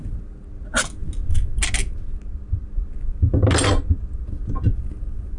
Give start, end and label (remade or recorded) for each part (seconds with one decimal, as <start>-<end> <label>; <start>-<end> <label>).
0.0-5.4 recorded